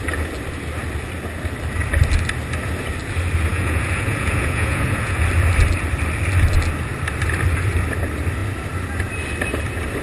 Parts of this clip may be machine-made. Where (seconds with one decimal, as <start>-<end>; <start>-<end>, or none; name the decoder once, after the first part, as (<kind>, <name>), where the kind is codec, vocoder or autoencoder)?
3.5-5.2 (vocoder, Vocos)